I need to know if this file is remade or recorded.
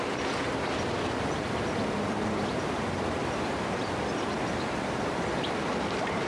remade